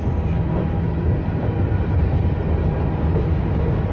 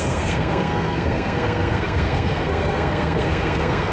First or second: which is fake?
second